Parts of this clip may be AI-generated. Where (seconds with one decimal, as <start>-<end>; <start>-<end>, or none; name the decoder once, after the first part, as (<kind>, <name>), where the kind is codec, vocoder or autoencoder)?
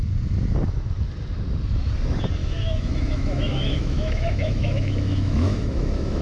2.4-6.2 (autoencoder, DAC-VAE)